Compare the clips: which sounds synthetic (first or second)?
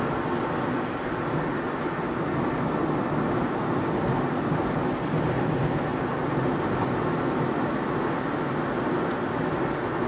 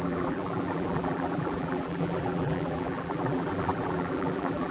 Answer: second